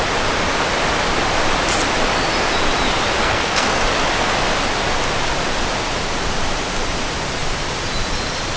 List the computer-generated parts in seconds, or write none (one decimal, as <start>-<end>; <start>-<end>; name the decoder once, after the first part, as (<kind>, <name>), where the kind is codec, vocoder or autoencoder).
3.2-3.8 (codec, SNAC)